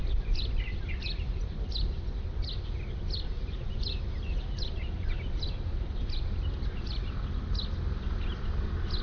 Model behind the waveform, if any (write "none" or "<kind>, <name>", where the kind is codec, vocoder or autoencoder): none